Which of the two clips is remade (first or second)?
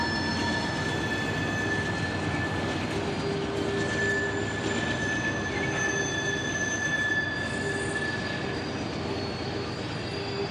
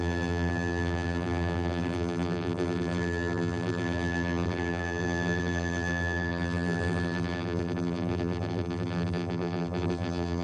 second